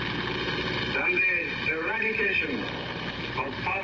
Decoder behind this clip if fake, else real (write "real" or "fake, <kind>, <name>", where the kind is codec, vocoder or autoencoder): real